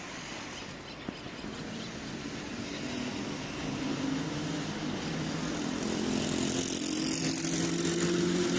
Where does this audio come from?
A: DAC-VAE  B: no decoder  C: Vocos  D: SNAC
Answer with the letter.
B